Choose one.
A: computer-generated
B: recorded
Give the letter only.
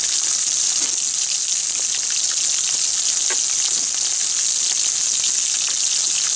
B